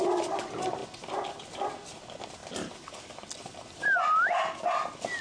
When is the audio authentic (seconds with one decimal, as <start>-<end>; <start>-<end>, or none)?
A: 0.0-5.2